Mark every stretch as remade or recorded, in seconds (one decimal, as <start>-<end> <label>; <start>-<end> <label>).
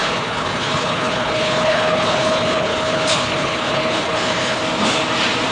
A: 0.0-4.6 remade; 4.6-5.5 recorded